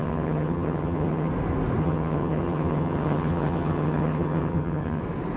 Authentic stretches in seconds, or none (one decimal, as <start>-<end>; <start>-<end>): 1.3-1.8; 5.0-5.4